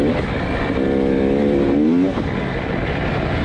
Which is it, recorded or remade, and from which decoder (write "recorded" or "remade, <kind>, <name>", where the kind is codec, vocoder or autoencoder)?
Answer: recorded